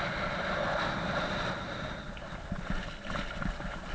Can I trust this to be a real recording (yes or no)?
yes